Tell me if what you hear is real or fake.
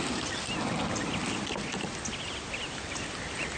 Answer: real